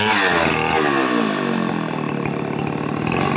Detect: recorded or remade recorded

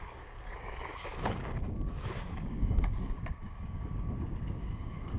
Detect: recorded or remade remade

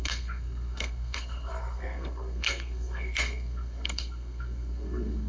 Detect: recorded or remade remade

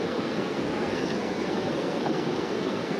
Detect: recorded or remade remade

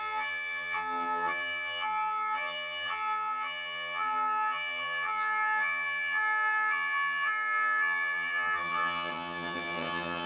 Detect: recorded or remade remade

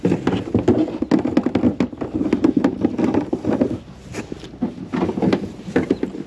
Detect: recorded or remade recorded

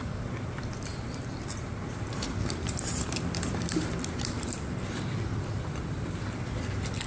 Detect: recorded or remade remade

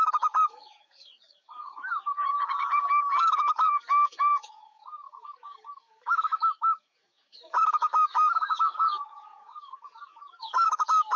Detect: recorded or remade remade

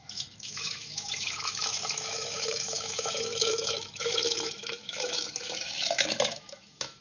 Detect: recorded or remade remade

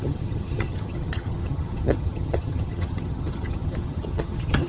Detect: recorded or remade remade